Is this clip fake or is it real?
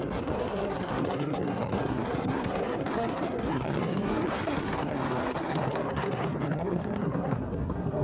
fake